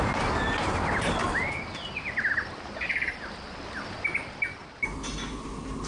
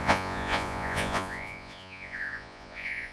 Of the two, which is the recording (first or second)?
first